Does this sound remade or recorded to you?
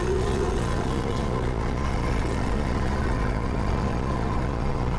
remade